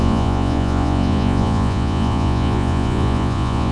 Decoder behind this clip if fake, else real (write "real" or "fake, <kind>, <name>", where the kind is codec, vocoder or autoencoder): fake, vocoder, Vocos